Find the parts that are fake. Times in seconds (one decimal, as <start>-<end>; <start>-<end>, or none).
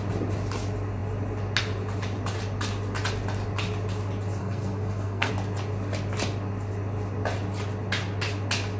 4.4-5.3